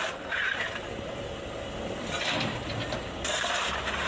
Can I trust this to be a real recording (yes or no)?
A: no